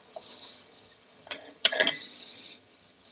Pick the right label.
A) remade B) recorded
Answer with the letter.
A